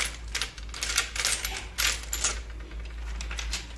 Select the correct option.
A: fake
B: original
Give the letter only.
B